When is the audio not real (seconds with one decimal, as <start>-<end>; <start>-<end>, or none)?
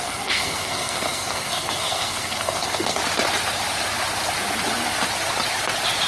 0.0-3.0